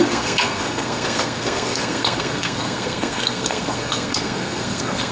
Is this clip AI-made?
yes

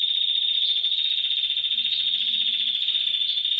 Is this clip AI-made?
no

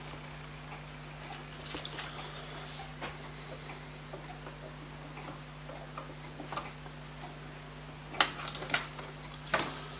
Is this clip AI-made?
no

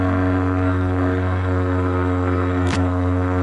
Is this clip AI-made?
yes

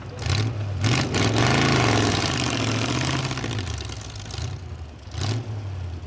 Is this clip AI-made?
no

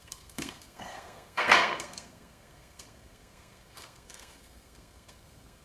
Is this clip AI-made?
yes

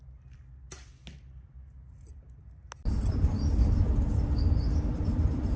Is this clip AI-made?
no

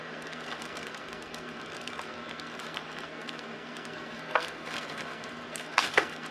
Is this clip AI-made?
yes